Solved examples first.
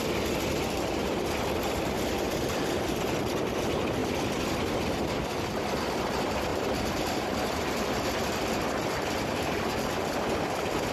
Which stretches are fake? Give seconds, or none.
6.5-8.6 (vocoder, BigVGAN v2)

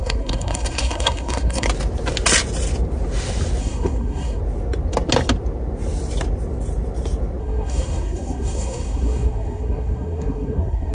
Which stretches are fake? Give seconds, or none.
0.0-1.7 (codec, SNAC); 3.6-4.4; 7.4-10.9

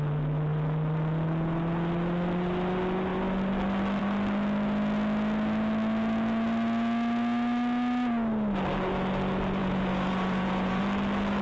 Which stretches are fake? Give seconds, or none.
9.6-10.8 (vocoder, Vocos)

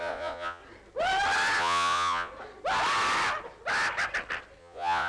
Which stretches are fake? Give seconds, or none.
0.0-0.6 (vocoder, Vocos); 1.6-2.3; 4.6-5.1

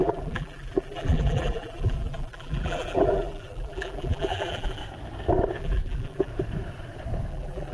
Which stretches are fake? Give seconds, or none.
0.0-4.8 (vocoder, BigVGAN v2); 5.6-6.3; 7.3-7.7

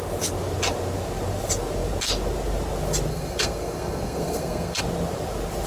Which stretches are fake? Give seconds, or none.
3.1-4.8 (codec, SNAC)